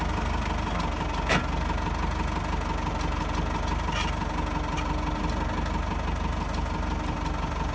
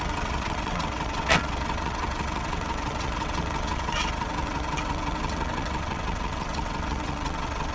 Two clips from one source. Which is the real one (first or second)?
first